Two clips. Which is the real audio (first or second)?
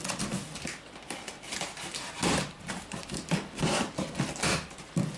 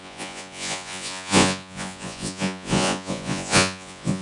first